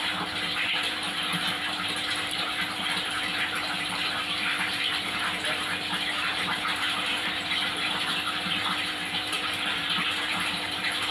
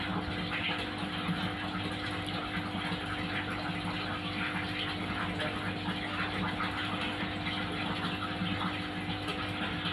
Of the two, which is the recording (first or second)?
second